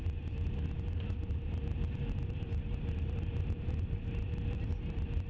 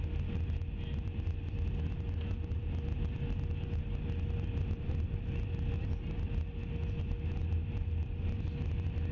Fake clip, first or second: first